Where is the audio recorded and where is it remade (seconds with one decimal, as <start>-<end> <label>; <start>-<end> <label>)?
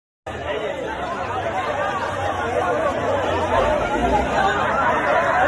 0.0-5.5 recorded